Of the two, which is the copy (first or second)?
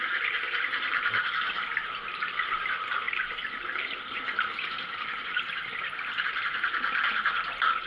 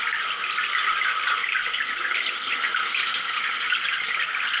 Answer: first